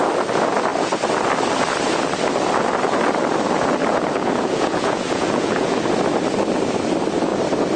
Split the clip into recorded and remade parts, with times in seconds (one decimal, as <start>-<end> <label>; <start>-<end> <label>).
0.0-3.9 recorded; 3.9-5.7 remade; 5.7-7.8 recorded